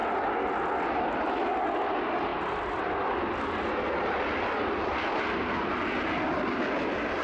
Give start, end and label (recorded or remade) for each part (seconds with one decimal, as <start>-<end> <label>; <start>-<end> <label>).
0.0-7.2 recorded